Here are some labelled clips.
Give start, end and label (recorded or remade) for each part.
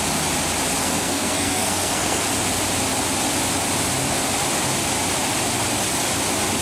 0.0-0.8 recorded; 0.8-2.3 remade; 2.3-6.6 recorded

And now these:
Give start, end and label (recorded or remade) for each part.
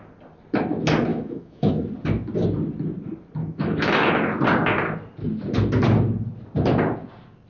0.0-1.1 recorded; 1.1-1.7 remade; 1.7-3.4 recorded; 3.4-4.1 remade; 4.1-7.5 recorded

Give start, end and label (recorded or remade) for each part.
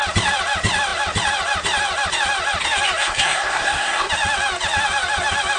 0.0-3.0 recorded; 3.0-4.1 remade; 4.1-5.6 recorded